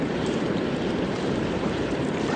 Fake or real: fake